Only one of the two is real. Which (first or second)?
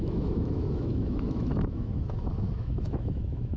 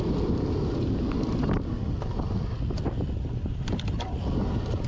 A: second